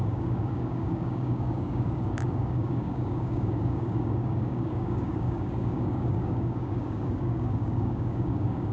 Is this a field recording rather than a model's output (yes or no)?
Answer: no